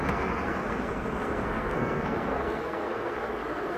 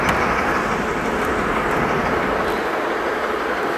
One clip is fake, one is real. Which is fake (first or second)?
first